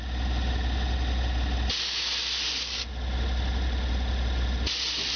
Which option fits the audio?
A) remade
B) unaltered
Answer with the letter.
B